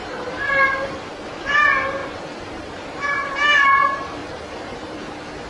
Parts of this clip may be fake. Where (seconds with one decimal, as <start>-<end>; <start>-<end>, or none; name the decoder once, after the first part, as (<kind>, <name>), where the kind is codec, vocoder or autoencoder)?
2.0-3.3 (vocoder, BigVGAN v2); 4.2-5.1